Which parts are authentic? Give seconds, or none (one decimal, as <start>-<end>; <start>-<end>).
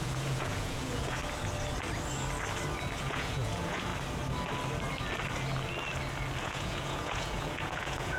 1.2-3.0; 3.9-6.4